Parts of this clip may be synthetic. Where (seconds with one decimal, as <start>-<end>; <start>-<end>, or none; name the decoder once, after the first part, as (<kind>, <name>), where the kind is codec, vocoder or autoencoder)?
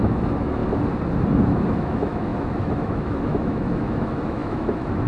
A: 0.0-0.6 (autoencoder, DAC-VAE); 1.4-5.1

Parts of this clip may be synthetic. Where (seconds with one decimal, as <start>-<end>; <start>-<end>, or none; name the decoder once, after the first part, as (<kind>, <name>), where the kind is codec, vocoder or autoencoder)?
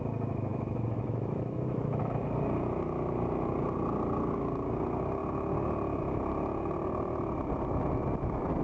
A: 0.5-2.2 (autoencoder, DAC-VAE)